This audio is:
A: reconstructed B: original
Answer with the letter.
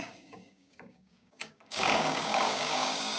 A